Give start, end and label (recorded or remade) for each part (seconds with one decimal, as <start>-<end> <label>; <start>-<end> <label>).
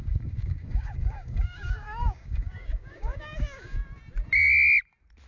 0.0-3.8 remade; 3.8-5.3 recorded